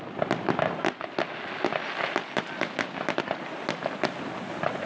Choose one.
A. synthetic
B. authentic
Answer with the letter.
B